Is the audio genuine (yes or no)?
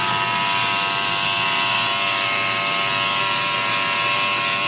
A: yes